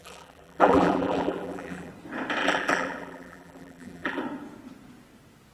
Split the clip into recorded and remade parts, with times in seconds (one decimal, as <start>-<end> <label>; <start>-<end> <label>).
0.0-1.9 remade; 1.9-2.4 recorded; 2.4-4.2 remade; 4.2-5.5 recorded

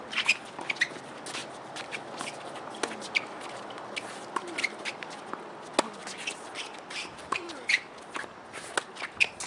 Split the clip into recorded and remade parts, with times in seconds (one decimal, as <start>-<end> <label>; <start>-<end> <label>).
0.0-9.5 recorded

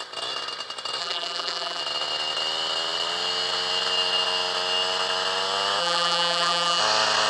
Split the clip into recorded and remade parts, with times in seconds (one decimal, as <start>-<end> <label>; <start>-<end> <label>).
0.0-1.0 recorded; 1.0-1.8 remade; 1.8-5.8 recorded; 5.8-6.8 remade; 6.8-7.3 recorded

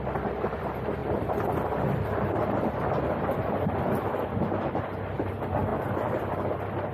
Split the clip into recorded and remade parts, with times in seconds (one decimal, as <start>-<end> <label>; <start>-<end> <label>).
0.0-1.0 recorded; 1.0-2.7 remade; 2.7-5.7 recorded; 5.7-6.2 remade; 6.2-6.9 recorded